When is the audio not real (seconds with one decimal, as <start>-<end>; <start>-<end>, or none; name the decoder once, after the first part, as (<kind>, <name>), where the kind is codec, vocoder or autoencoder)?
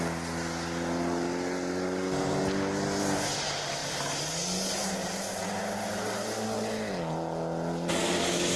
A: none